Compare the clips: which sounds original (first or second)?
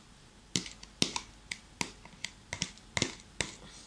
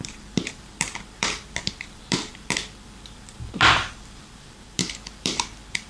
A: first